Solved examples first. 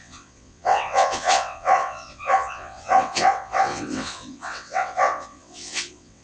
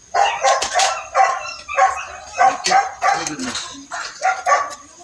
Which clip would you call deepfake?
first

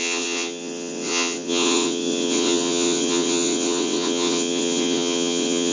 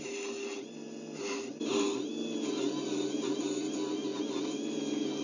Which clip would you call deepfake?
first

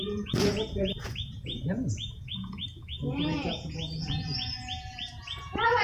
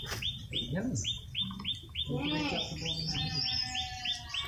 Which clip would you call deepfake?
first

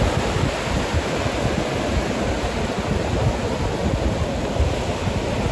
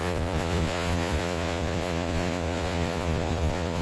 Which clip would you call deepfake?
second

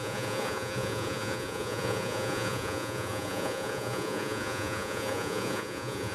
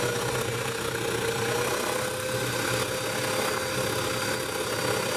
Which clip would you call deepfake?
first